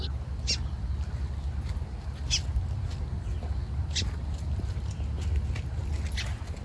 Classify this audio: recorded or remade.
recorded